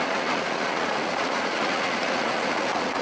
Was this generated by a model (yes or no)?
yes